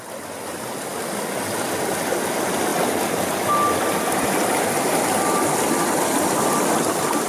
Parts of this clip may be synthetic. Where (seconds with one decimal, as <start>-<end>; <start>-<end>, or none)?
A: none